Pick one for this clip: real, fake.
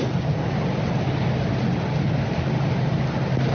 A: real